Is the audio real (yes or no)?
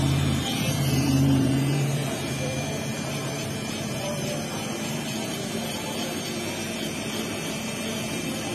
no